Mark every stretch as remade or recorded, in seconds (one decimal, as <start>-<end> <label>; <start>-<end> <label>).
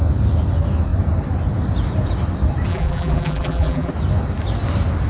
0.0-2.7 recorded; 2.7-3.9 remade; 3.9-5.1 recorded